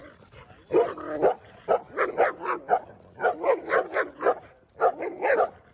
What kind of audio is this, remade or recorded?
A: recorded